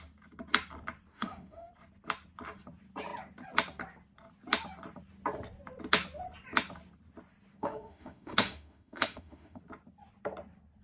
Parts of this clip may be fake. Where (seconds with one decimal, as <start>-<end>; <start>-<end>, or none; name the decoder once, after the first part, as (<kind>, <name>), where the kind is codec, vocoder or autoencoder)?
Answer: 1.1-1.7 (autoencoder, DAC-VAE); 7.6-9.6